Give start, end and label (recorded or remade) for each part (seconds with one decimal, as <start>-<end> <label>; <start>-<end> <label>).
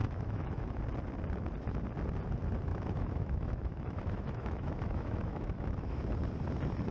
0.0-0.8 remade; 0.8-2.7 recorded; 2.7-6.2 remade; 6.2-6.9 recorded